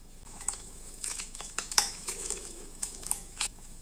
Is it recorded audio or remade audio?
remade